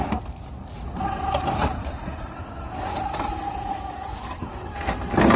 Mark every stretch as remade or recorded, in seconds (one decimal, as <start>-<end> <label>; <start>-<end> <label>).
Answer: 0.0-1.8 recorded; 1.8-2.4 remade; 2.4-3.3 recorded; 3.3-4.2 remade; 4.2-5.4 recorded